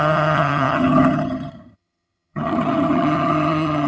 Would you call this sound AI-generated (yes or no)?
yes